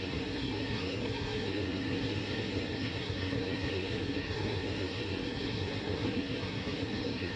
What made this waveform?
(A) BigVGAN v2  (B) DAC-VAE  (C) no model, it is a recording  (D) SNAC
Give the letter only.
D